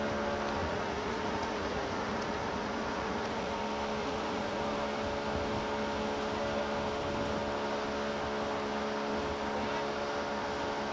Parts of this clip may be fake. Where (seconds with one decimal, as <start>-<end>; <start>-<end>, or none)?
0.6-3.6; 4.0-4.6